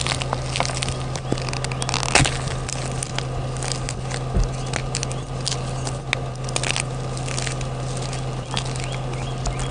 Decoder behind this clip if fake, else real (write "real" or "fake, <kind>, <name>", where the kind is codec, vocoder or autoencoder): real